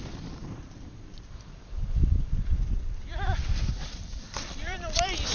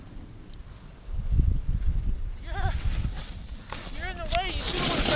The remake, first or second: first